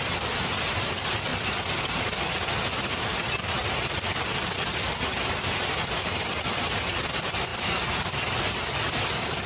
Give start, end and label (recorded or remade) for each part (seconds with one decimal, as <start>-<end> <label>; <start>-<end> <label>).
0.0-9.5 recorded

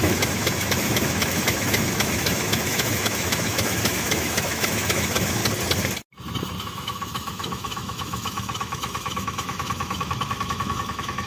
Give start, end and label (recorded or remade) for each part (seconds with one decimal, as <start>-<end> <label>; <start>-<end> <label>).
0.0-5.4 remade; 5.4-6.6 recorded; 6.6-11.3 remade

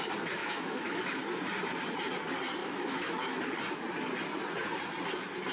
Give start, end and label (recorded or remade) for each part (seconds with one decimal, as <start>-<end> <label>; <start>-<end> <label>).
0.0-0.4 recorded; 0.4-1.2 remade; 1.2-2.6 recorded; 2.6-3.4 remade; 3.4-5.5 recorded

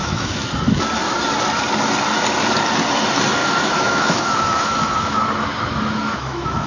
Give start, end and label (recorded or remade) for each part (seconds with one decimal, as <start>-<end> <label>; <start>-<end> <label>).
0.0-0.5 remade; 0.5-3.4 recorded; 3.4-6.7 remade

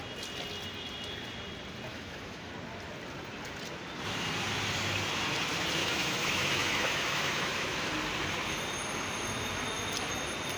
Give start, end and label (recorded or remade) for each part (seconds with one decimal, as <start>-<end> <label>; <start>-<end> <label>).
0.0-1.9 recorded; 1.9-2.5 remade; 2.5-5.8 recorded; 5.8-7.9 remade; 7.9-10.6 recorded

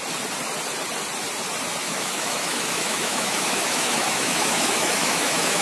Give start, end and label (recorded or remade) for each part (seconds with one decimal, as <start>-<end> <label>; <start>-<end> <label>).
0.0-1.8 recorded; 1.8-5.6 remade